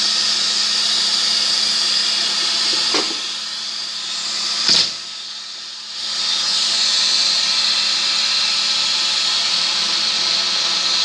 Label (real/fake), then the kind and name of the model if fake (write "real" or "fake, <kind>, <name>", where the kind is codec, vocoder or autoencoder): real